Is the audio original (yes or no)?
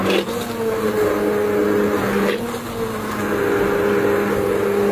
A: yes